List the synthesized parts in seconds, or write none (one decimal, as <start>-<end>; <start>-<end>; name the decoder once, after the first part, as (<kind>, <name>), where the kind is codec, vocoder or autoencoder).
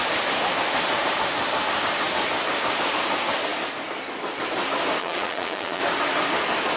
5.0-5.8 (vocoder, Vocos)